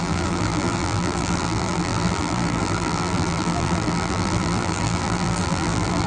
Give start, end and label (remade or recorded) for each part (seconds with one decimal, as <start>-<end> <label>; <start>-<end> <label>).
0.0-6.1 remade